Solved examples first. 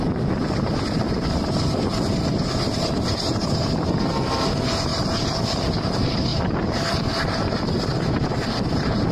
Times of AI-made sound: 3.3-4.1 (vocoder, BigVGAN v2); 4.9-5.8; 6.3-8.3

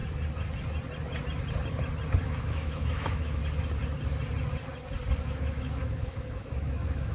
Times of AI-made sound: 2.2-3.4 (autoencoder, DAC-VAE); 5.2-7.1

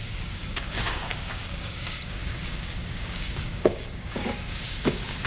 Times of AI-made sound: 0.0-5.3 (codec, DAC)

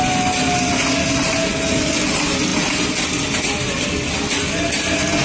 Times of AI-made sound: none

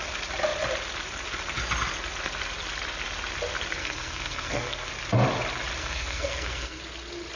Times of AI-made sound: 3.8-4.9 (codec, SNAC); 5.8-6.8

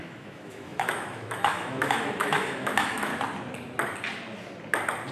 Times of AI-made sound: 0.0-3.1 (autoencoder, DAC-VAE)